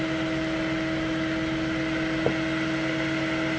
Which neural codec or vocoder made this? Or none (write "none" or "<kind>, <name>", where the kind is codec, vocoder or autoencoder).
none